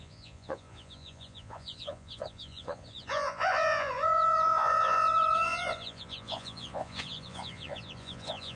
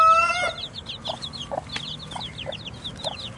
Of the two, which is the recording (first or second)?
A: second